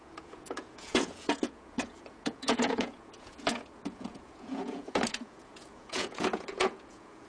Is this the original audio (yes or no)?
no